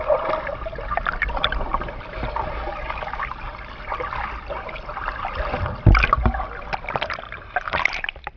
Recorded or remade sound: recorded